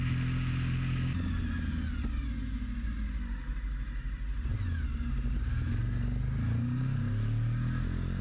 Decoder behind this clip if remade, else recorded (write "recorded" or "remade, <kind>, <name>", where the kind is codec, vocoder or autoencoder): recorded